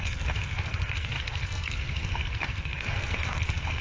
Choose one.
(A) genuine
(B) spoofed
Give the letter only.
B